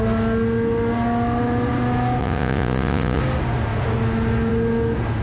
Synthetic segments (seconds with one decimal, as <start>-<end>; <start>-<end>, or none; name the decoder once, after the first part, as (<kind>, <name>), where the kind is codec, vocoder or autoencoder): 2.2-3.2 (vocoder, Vocos)